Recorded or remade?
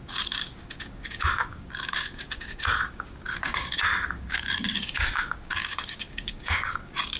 remade